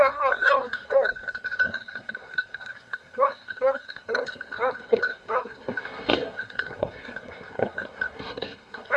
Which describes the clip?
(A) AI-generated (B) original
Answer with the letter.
A